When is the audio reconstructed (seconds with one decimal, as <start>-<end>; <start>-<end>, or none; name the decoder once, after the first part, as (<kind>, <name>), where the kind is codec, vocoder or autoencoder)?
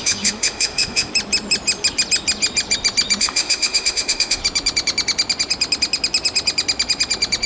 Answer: 0.0-1.1 (autoencoder, DAC-VAE); 3.2-4.4